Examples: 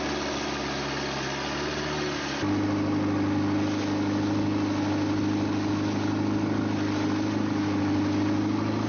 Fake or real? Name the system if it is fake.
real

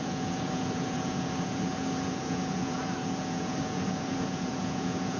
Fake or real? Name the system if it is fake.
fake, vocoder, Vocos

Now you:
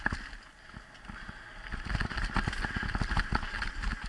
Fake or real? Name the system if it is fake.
real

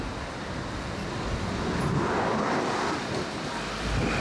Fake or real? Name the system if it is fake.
real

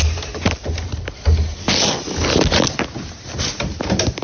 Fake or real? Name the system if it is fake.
real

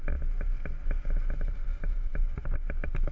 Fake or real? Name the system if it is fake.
real